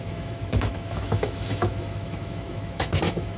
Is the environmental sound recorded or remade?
remade